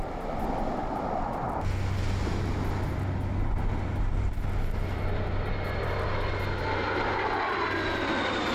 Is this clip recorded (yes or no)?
yes